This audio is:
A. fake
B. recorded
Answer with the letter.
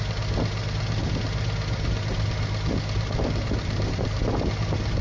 B